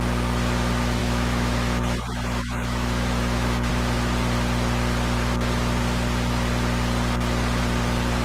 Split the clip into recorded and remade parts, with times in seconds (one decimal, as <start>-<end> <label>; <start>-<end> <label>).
0.0-1.0 recorded; 1.0-3.7 remade; 3.7-8.2 recorded